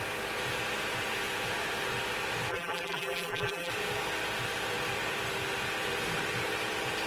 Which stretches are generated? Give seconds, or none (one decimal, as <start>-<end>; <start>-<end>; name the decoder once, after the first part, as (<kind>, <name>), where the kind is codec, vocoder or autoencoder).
2.5-3.7 (vocoder, BigVGAN v2)